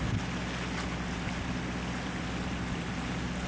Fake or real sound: real